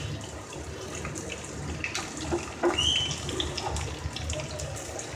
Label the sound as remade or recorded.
recorded